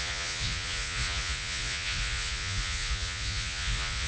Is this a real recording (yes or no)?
no